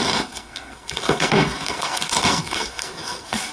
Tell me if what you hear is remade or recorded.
remade